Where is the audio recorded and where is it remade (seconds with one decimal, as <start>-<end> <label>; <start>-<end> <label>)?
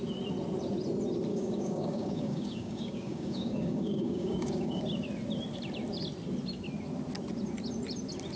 0.0-1.3 recorded; 1.3-4.8 remade; 4.8-8.4 recorded